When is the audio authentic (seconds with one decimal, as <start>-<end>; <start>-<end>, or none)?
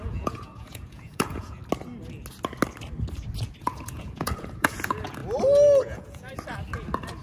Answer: 1.6-3.6; 5.2-5.8; 6.3-7.2